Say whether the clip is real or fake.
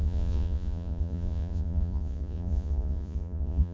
fake